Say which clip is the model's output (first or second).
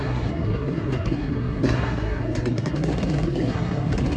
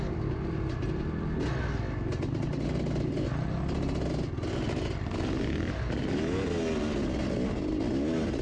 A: first